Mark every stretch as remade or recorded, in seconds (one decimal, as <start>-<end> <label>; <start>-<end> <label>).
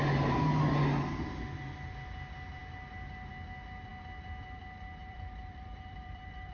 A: 0.0-5.0 recorded; 5.0-6.5 remade